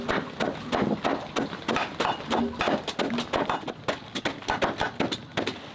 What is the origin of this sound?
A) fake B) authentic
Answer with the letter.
B